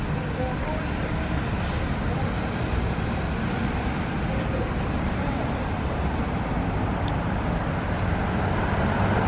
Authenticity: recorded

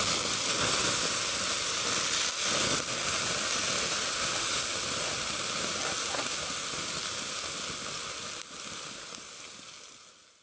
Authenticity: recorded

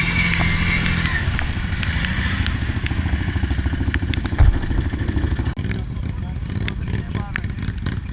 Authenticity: recorded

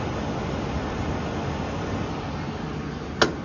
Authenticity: recorded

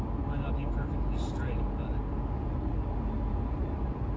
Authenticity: recorded